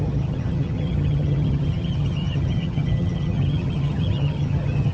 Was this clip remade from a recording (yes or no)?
yes